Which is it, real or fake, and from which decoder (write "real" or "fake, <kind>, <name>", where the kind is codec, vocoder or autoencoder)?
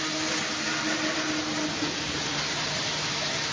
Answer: real